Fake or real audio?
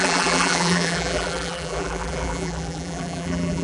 fake